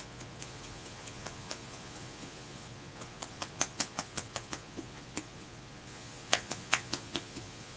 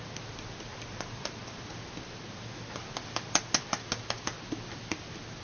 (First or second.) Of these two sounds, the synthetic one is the first